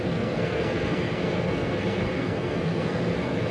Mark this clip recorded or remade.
remade